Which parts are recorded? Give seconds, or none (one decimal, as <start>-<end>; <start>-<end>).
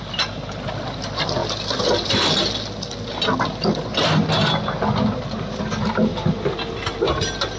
0.0-7.6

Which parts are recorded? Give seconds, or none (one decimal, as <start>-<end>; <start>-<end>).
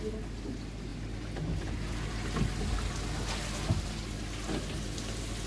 0.0-5.5